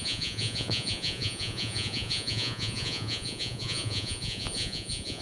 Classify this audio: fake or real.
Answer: fake